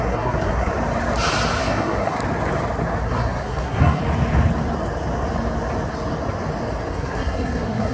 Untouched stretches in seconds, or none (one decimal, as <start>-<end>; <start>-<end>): 0.7-1.6; 2.2-3.0; 4.0-6.9